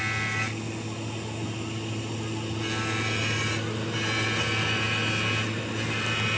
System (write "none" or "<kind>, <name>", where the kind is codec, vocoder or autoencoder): none